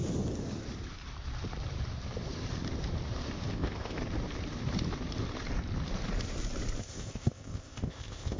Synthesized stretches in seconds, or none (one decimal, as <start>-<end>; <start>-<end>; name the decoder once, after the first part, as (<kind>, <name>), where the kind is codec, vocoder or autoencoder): 3.5-4.0 (codec, ZipCodec); 6.8-8.4